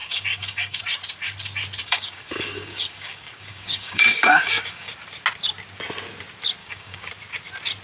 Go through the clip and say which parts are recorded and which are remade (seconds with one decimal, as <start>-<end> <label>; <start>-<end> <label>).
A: 0.0-0.8 remade; 0.8-1.8 recorded; 1.8-4.9 remade; 4.9-6.6 recorded; 6.6-7.1 remade; 7.1-7.8 recorded